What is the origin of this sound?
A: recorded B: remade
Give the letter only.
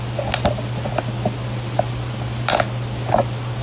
A